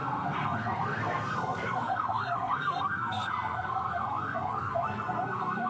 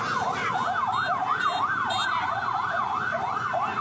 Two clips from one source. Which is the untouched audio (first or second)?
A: second